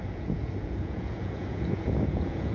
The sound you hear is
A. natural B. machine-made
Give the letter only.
B